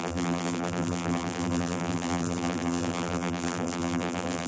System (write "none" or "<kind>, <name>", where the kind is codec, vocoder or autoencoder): vocoder, BigVGAN v2